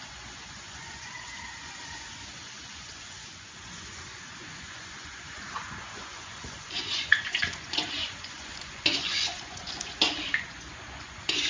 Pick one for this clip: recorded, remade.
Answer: remade